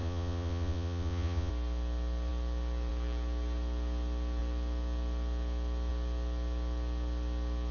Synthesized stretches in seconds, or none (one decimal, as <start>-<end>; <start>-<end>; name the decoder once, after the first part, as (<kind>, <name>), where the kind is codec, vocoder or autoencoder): 0.0-1.5 (vocoder, Vocos)